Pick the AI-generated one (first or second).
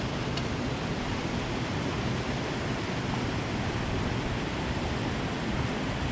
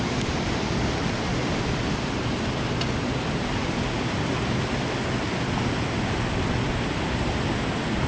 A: first